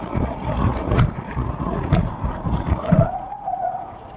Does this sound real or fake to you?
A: fake